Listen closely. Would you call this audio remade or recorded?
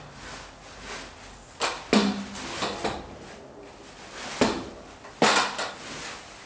recorded